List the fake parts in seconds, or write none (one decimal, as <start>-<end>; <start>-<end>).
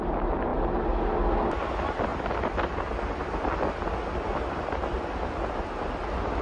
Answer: none